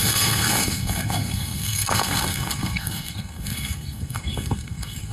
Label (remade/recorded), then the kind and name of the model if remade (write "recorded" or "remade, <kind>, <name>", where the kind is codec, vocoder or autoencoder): remade, codec, SNAC